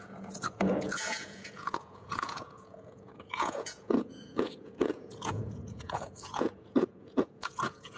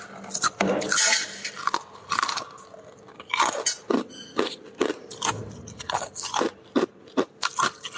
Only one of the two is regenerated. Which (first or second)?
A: first